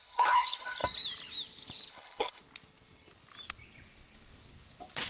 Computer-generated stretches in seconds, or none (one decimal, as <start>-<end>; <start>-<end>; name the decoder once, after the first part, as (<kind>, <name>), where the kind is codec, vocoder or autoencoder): 0.0-0.8 (codec, HILCodec); 1.9-2.4